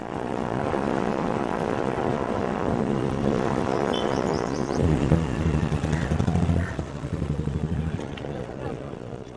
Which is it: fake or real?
fake